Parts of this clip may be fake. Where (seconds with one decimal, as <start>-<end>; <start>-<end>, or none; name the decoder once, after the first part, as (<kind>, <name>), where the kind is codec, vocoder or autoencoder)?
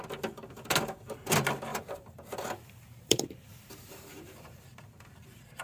1.7-4.8 (vocoder, BigVGAN v2)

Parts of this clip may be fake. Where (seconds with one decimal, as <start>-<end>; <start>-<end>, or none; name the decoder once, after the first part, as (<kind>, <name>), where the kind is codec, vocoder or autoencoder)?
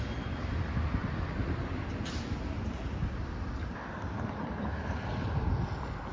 none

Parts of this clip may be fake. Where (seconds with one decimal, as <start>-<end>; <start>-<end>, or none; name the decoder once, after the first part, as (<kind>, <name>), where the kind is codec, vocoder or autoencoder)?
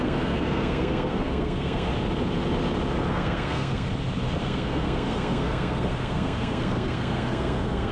0.0-1.9 (codec, SNAC); 3.1-3.9; 4.4-7.9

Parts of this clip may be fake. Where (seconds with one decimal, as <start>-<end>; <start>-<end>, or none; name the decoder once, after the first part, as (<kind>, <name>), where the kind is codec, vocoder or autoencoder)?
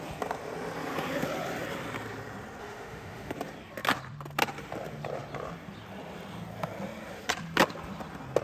2.6-3.3 (autoencoder, DAC-VAE)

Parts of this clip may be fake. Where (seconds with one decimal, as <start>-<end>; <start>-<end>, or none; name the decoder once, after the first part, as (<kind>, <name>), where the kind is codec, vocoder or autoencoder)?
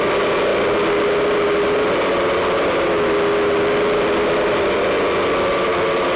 none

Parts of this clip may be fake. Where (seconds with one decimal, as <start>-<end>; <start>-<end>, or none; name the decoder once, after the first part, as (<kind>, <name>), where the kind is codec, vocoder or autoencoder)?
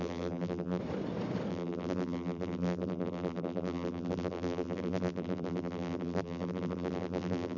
0.0-0.8 (vocoder, BigVGAN v2); 1.5-7.6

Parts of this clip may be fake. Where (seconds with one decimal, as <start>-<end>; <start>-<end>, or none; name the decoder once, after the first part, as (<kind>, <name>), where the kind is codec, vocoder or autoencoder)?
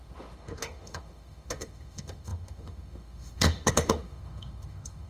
0.0-5.1 (autoencoder, DAC-VAE)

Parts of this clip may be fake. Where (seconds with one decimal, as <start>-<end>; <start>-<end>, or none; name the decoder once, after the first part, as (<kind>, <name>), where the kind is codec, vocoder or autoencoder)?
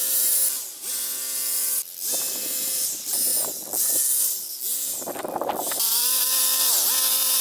0.0-3.3 (vocoder, BigVGAN v2); 5.2-7.4